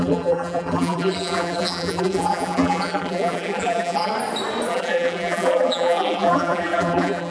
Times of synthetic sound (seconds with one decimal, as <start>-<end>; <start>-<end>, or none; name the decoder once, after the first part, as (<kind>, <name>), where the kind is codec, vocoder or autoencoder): 0.0-4.1 (vocoder, BigVGAN v2); 4.7-7.3